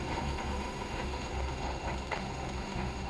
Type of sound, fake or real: fake